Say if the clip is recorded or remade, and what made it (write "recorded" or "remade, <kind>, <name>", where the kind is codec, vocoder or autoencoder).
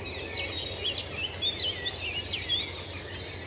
recorded